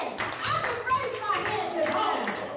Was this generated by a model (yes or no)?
no